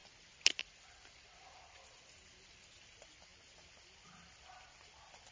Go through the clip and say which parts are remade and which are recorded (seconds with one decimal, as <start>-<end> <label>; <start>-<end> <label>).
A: 0.0-5.3 recorded